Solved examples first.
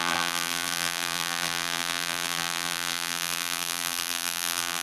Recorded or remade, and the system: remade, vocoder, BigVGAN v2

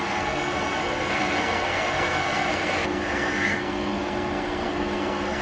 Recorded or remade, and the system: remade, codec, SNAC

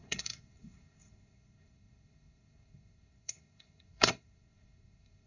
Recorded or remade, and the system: remade, codec, SNAC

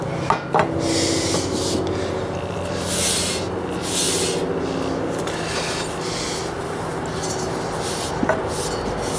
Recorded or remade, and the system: recorded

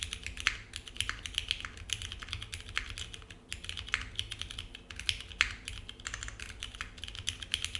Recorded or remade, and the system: recorded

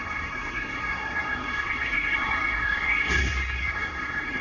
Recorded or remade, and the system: remade, codec, SNAC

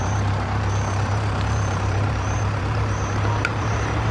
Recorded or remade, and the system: remade, vocoder, BigVGAN v2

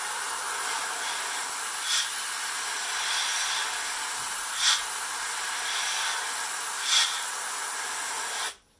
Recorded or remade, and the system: recorded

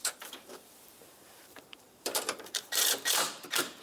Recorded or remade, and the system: remade, vocoder, BigVGAN v2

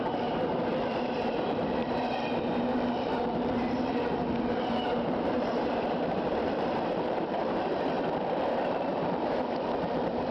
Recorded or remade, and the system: remade, vocoder, BigVGAN v2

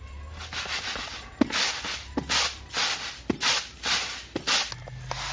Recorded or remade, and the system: recorded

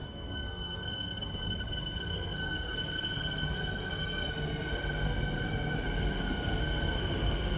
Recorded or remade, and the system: remade, codec, SNAC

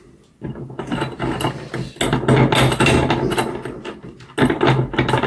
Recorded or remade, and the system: recorded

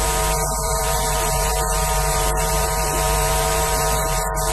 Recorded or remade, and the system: remade, vocoder, BigVGAN v2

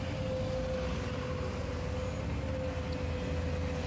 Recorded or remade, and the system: recorded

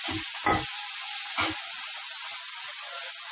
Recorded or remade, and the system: recorded